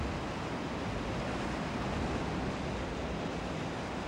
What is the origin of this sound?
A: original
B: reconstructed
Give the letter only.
A